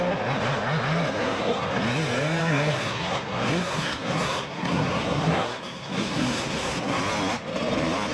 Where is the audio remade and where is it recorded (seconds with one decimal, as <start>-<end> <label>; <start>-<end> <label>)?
0.0-1.2 recorded; 1.2-1.8 remade; 1.8-2.4 recorded; 2.4-7.0 remade; 7.0-8.1 recorded